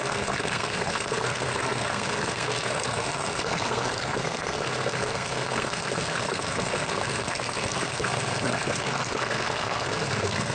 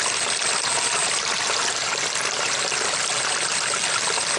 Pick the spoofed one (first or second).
first